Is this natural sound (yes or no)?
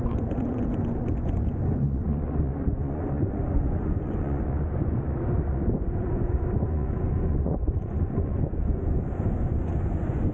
no